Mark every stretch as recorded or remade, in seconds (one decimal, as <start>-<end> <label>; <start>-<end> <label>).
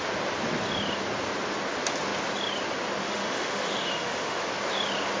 0.0-3.0 recorded; 3.0-4.4 remade; 4.4-5.2 recorded